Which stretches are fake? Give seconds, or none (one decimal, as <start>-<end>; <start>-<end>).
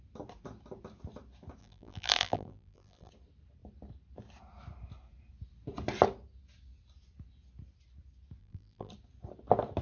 1.6-3.1; 8.4-8.9